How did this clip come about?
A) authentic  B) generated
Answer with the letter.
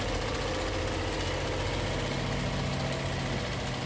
A